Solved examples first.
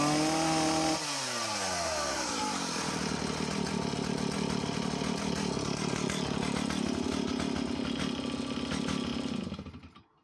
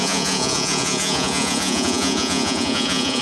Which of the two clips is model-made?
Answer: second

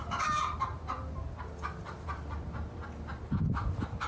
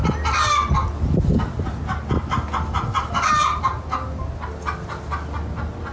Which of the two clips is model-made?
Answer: first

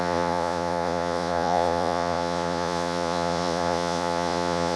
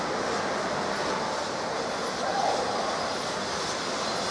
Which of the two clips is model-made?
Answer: first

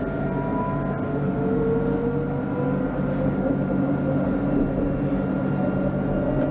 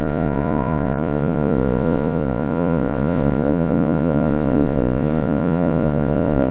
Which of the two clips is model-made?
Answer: second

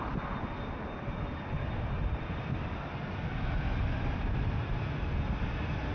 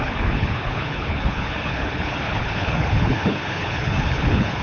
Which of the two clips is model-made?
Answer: second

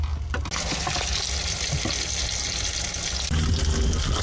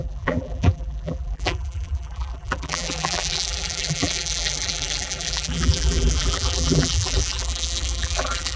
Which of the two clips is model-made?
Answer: second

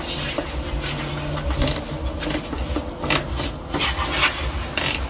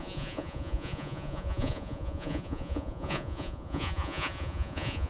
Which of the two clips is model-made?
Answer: second